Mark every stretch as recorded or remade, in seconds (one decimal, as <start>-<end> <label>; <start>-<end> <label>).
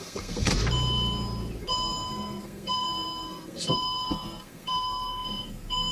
0.0-0.5 remade; 0.5-1.6 recorded; 1.6-5.9 remade